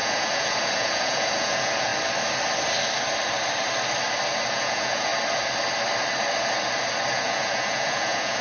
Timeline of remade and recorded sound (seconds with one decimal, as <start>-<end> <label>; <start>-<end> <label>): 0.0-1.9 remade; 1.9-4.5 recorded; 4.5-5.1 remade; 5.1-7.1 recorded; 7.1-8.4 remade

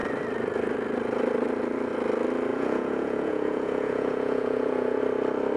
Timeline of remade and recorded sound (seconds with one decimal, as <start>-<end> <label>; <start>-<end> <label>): 0.0-2.5 recorded; 2.5-5.0 remade; 5.0-5.6 recorded

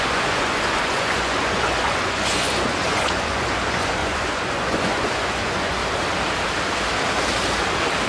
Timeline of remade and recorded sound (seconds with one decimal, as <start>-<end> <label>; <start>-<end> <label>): 0.0-5.8 remade; 5.8-8.1 recorded

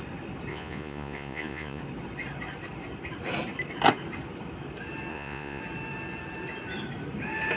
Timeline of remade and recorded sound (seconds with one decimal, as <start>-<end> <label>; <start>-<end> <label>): 0.0-0.5 recorded; 0.5-1.8 remade; 1.8-5.1 recorded; 5.1-5.6 remade; 5.6-7.6 recorded

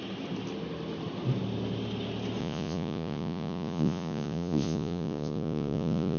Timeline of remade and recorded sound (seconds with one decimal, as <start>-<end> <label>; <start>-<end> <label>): 0.0-2.4 recorded; 2.4-6.2 remade